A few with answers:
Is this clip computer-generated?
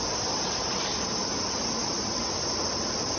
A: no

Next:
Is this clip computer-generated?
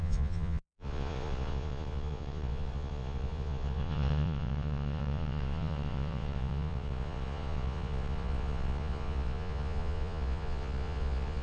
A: yes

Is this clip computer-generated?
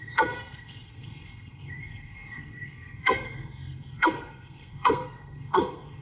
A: yes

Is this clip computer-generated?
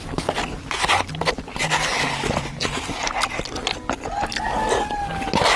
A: no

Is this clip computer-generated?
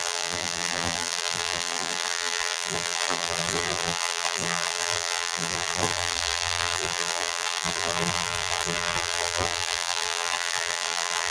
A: yes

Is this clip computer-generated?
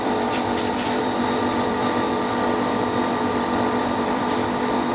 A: yes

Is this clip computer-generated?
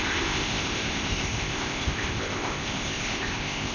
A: yes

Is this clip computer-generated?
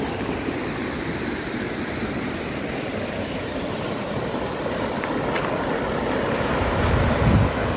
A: no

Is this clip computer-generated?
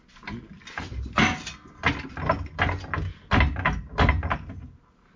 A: no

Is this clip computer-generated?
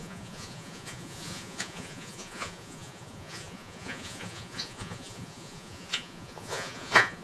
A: yes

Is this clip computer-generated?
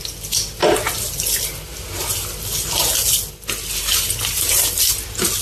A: no